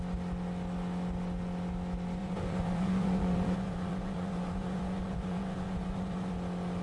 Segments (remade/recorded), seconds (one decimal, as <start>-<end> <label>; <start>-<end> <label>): 0.0-2.2 recorded; 2.2-6.3 remade; 6.3-6.8 recorded

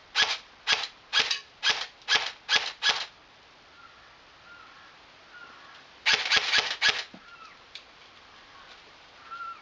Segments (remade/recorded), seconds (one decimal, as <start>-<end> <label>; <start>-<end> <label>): 0.0-9.6 recorded

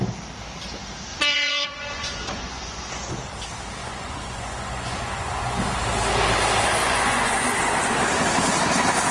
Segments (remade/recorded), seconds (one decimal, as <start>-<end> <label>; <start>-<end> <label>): 0.0-1.1 recorded; 1.1-3.1 remade; 3.1-3.8 recorded; 3.8-5.6 remade; 5.6-6.8 recorded; 6.8-7.6 remade; 7.6-9.1 recorded

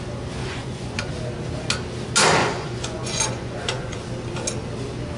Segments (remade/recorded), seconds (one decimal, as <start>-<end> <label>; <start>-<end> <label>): 0.0-0.4 recorded; 0.4-1.1 remade; 1.1-2.4 recorded; 2.4-4.0 remade; 4.0-5.2 recorded

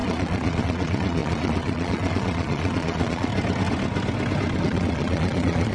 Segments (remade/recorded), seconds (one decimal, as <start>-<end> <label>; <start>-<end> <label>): 0.0-3.3 remade; 3.3-4.6 recorded; 4.6-5.7 remade